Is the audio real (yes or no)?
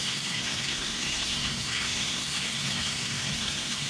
no